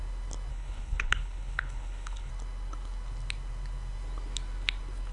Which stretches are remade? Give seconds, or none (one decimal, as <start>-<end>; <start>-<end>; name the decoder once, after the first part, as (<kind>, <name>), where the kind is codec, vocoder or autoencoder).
0.5-2.3 (codec, HILCodec)